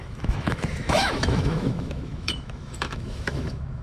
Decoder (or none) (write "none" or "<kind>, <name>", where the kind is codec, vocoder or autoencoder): autoencoder, DAC-VAE